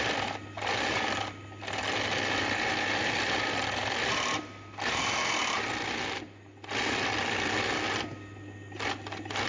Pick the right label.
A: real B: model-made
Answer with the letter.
A